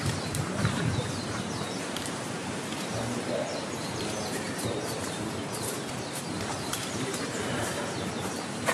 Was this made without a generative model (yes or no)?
no